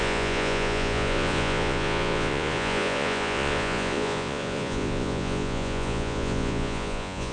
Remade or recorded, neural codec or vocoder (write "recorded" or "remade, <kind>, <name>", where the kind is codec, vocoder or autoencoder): remade, vocoder, Vocos